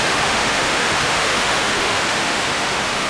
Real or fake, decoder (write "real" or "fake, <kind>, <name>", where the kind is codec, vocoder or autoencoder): fake, autoencoder, DAC-VAE